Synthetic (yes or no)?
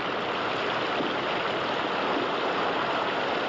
no